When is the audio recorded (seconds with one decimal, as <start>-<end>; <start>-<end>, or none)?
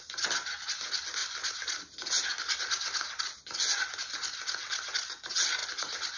0.0-6.2